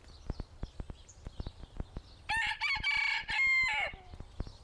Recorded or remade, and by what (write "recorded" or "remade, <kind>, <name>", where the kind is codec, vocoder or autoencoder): recorded